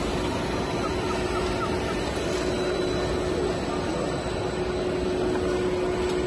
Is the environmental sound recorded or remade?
recorded